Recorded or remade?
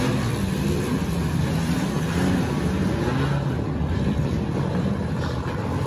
recorded